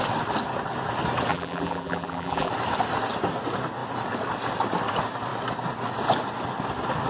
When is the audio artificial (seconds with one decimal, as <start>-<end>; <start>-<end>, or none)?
1.3-2.5